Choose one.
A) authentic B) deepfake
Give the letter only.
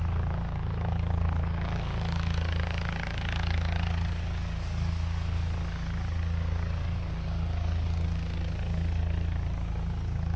B